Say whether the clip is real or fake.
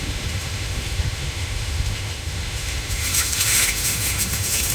fake